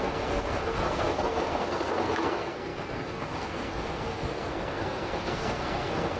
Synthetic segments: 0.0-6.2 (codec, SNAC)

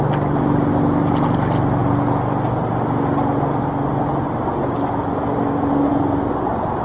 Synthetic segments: none

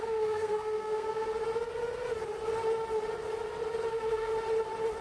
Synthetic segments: 0.0-1.4 (codec, SNAC); 3.9-4.3